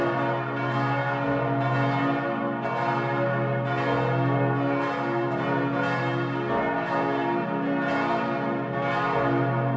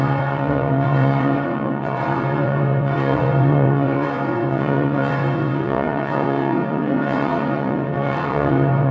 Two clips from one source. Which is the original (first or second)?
first